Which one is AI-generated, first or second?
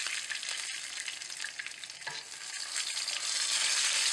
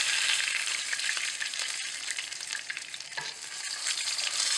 second